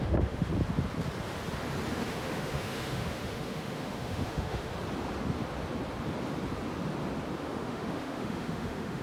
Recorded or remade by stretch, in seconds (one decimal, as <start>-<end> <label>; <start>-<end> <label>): 0.0-0.5 remade; 0.5-1.9 recorded; 1.9-4.7 remade; 4.7-7.4 recorded; 7.4-9.0 remade